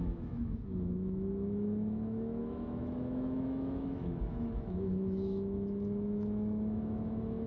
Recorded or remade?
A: remade